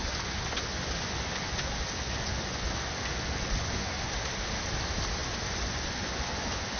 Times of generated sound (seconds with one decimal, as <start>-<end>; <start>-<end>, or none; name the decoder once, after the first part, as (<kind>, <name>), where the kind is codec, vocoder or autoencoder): 0.0-4.1 (vocoder, Vocos); 5.2-6.8